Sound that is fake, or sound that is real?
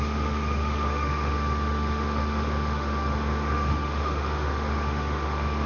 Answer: fake